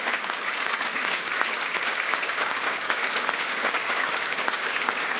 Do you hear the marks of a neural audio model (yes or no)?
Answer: yes